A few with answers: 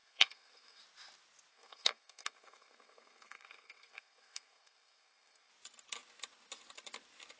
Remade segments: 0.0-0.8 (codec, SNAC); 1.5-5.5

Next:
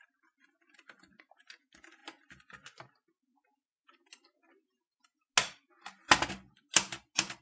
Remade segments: none

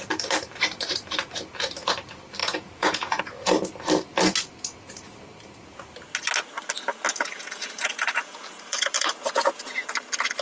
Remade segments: 2.4-3.2 (vocoder, Vocos); 7.1-9.9

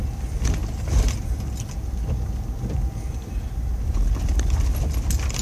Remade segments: none